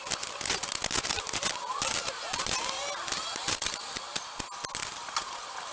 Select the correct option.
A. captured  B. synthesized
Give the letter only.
A